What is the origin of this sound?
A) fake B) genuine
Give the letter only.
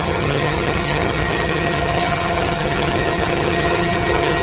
A